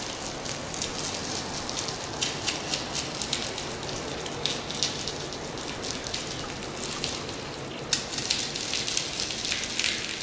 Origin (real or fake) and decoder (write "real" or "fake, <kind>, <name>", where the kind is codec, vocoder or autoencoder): real